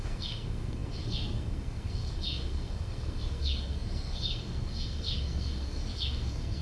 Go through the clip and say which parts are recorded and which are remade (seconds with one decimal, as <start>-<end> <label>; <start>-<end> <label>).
0.0-6.6 remade